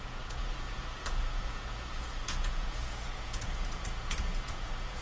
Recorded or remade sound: remade